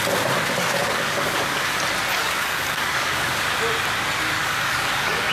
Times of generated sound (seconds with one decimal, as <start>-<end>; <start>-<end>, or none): 0.8-1.8; 2.2-3.4; 4.4-5.3